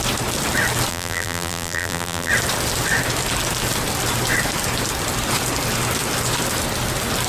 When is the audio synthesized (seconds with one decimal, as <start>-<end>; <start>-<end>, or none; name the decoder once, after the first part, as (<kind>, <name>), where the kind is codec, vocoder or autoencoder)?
0.9-2.3 (vocoder, BigVGAN v2)